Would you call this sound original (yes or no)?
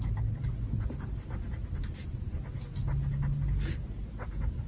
yes